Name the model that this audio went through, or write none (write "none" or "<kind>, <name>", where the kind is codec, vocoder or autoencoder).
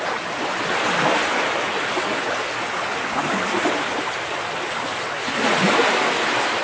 none